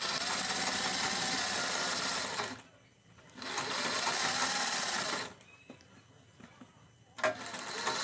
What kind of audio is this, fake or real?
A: real